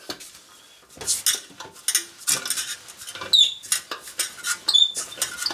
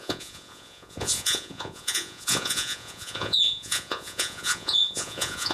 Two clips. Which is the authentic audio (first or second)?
first